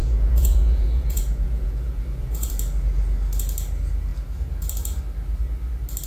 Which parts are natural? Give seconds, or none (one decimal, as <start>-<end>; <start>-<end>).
2.5-6.1